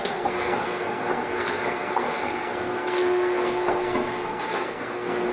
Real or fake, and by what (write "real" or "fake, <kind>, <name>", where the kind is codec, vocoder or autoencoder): fake, codec, SNAC